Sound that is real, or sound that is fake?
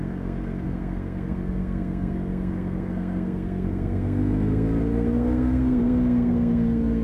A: fake